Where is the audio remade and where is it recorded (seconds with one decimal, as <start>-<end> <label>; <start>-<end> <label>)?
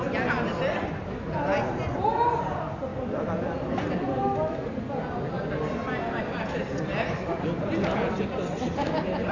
0.0-2.9 recorded; 2.9-4.2 remade; 4.2-9.3 recorded